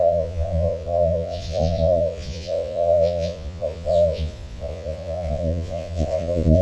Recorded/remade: remade